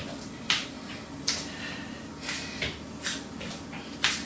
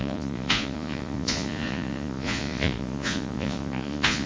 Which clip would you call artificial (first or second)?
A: second